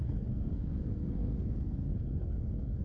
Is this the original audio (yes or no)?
no